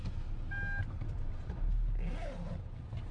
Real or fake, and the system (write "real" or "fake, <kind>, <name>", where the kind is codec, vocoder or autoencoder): real